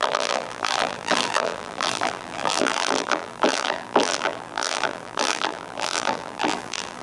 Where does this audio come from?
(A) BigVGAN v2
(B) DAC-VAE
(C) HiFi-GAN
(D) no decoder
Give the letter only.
A